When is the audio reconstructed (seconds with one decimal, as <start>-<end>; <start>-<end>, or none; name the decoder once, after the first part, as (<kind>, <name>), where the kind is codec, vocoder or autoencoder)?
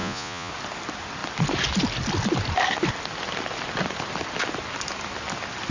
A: 0.0-0.5 (vocoder, Vocos)